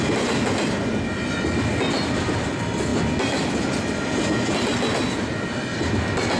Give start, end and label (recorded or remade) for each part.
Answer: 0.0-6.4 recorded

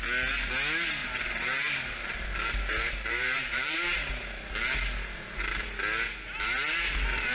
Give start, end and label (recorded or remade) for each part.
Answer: 0.0-1.0 recorded; 1.0-4.1 remade; 4.1-7.3 recorded

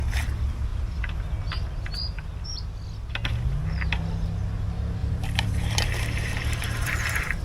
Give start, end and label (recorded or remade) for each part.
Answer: 0.0-5.0 recorded; 5.0-7.4 remade

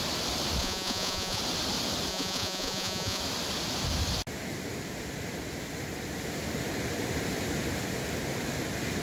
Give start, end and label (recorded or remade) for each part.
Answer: 0.0-0.6 recorded; 0.6-1.4 remade; 1.4-2.1 recorded; 2.1-3.2 remade; 3.2-9.0 recorded

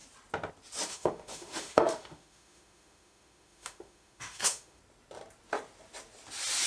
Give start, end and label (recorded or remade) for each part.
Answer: 0.0-0.9 recorded; 0.9-4.8 remade; 4.8-6.7 recorded

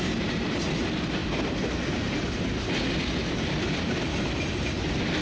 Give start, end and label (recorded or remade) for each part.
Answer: 0.0-5.2 recorded

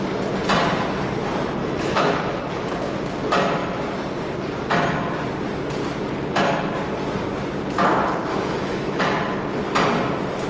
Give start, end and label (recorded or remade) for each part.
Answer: 0.0-1.6 recorded; 1.6-2.4 remade; 2.4-8.3 recorded; 8.3-9.0 remade; 9.0-10.5 recorded

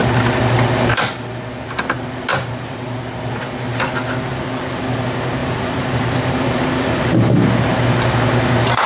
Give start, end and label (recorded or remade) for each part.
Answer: 0.0-2.3 recorded; 2.3-3.0 remade; 3.0-5.4 recorded; 5.4-6.9 remade; 6.9-8.9 recorded